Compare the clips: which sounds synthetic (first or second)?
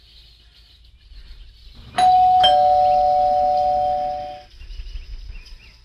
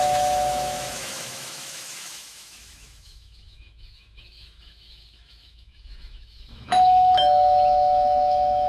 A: second